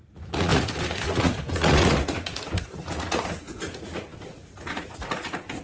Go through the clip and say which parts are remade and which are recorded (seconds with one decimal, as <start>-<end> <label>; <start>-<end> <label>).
0.0-5.6 remade